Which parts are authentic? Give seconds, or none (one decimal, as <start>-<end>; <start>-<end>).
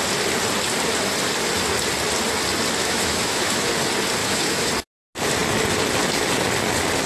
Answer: 0.0-2.8; 3.7-4.2; 4.7-7.1